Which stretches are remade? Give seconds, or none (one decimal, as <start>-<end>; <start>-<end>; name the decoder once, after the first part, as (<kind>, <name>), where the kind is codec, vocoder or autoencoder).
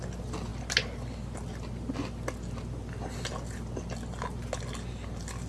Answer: none